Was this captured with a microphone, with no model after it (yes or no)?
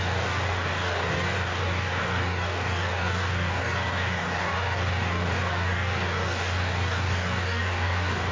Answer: no